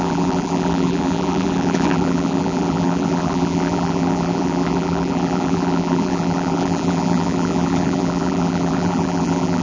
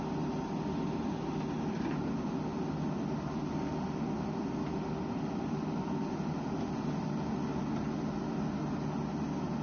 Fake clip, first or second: first